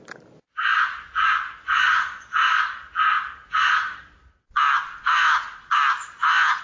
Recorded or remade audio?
recorded